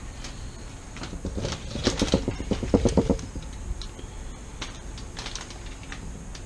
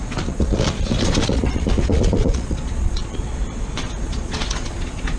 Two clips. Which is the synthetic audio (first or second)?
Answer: second